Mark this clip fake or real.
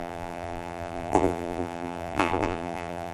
fake